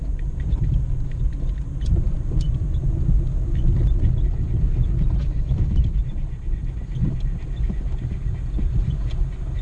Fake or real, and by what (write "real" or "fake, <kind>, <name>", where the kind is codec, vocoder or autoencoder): real